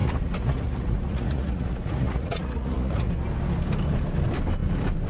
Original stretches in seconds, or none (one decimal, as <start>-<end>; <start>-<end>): 3.1-5.1